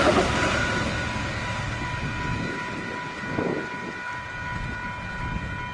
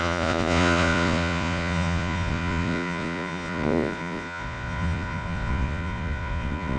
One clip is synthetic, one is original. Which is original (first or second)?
first